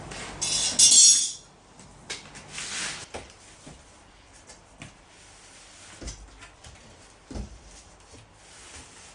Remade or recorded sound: recorded